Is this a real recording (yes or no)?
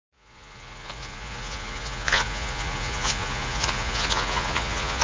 no